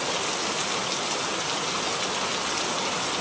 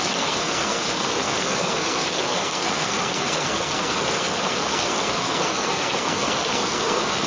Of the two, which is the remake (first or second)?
second